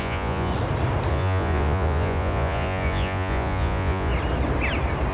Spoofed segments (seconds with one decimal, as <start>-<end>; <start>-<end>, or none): 0.0-0.5; 1.1-4.1